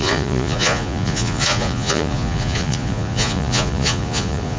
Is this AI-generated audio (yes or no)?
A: yes